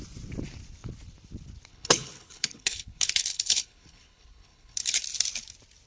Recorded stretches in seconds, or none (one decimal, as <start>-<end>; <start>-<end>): 0.0-1.7; 5.0-5.9